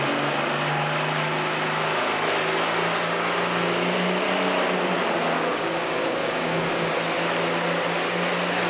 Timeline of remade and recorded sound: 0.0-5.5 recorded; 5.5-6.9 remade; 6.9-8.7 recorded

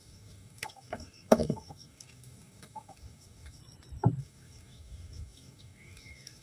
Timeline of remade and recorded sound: 0.0-3.6 remade; 3.6-4.2 recorded; 4.2-6.4 remade

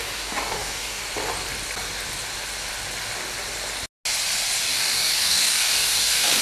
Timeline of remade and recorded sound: 0.0-1.0 remade; 1.0-4.6 recorded; 4.6-6.4 remade

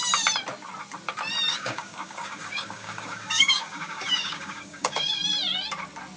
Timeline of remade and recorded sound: 0.0-1.5 recorded; 1.5-5.2 remade; 5.2-6.2 recorded

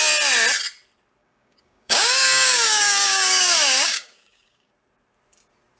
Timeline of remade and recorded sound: 0.0-1.2 recorded; 1.2-4.7 remade; 4.7-5.8 recorded

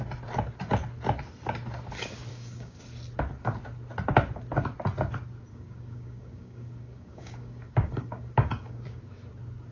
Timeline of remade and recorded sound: 0.0-2.3 recorded; 2.3-2.8 remade; 2.8-5.5 recorded; 5.5-9.0 remade; 9.0-9.7 recorded

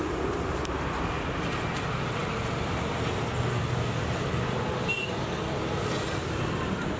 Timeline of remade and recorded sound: 0.0-7.0 recorded

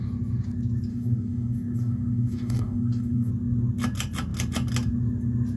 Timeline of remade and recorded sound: 0.0-0.9 recorded; 0.9-3.3 remade; 3.3-5.6 recorded